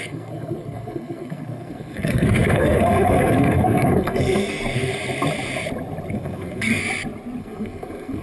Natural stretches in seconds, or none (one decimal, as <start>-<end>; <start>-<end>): 4.9-6.1; 6.8-7.4